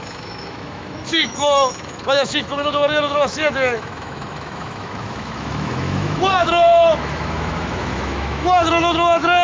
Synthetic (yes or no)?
yes